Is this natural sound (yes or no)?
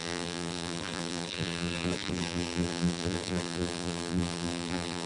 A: no